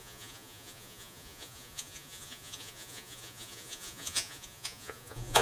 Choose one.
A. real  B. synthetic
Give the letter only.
B